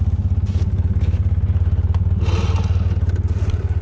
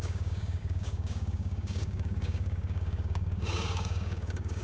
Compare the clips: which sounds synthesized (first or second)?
second